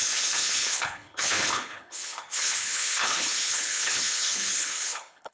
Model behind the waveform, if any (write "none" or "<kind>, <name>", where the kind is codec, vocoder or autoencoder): codec, HILCodec